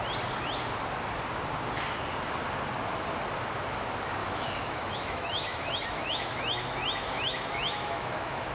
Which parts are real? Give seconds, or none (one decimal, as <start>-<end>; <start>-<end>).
0.0-4.2